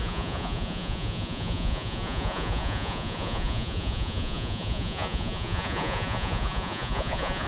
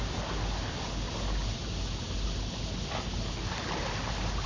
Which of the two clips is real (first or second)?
second